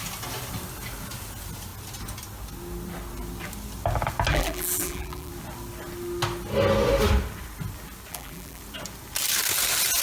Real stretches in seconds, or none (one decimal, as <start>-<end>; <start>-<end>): 0.0-4.3; 5.3-8.1; 8.6-10.0